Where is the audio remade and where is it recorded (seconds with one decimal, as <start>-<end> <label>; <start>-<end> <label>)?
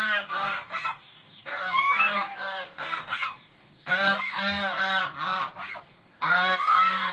0.0-5.0 remade; 5.0-5.8 recorded; 5.8-7.1 remade